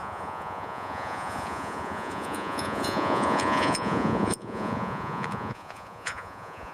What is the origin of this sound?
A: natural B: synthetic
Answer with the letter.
B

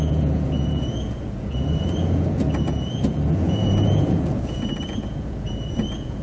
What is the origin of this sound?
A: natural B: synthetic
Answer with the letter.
B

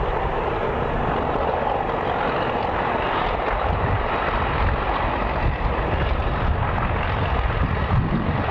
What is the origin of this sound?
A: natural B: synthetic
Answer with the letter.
A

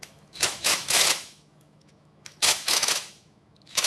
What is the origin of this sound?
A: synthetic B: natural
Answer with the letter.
A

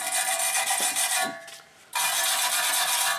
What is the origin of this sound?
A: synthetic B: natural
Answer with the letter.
A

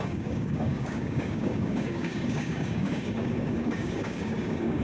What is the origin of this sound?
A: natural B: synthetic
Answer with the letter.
B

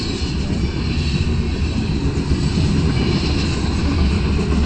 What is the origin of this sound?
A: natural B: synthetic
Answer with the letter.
A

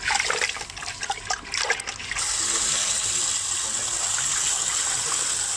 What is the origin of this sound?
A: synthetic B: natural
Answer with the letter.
B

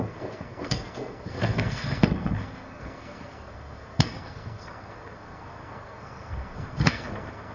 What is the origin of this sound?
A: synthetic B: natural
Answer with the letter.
A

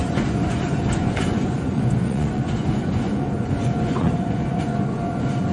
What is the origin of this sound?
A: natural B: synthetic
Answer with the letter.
B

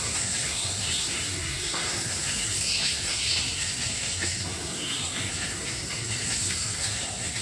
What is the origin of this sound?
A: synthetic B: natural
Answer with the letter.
A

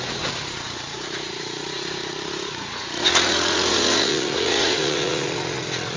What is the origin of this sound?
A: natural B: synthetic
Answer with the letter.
B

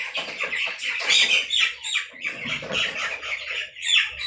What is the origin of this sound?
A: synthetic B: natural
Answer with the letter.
A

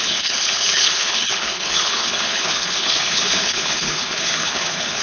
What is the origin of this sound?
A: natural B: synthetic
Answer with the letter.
B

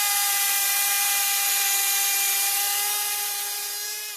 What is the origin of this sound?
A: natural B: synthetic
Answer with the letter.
A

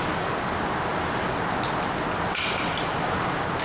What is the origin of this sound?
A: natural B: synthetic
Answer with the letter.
A